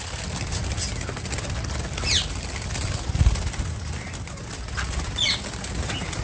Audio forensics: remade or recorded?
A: recorded